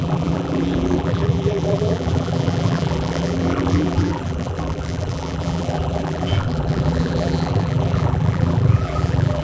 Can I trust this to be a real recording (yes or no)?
no